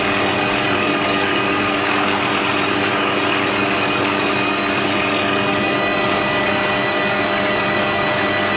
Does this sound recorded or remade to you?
remade